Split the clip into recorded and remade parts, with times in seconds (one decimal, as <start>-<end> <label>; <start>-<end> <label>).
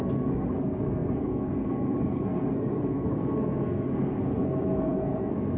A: 0.0-5.6 remade